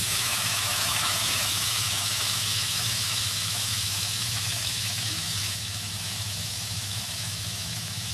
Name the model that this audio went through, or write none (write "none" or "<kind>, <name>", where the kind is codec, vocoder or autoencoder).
autoencoder, DAC-VAE